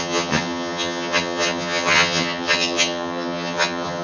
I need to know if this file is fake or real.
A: fake